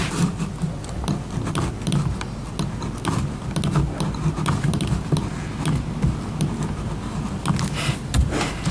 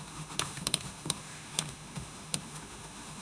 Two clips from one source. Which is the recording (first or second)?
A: first